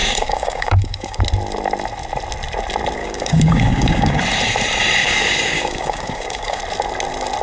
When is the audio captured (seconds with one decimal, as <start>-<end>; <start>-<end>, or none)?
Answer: 1.2-3.0; 4.2-5.0; 6.6-7.4